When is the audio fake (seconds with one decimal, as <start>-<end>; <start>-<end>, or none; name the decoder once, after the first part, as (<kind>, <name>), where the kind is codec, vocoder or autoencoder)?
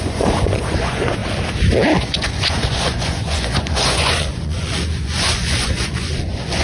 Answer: 0.0-1.2 (vocoder, Vocos); 2.0-6.6